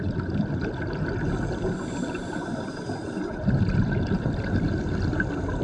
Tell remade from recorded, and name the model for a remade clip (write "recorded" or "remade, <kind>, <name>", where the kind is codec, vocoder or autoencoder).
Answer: recorded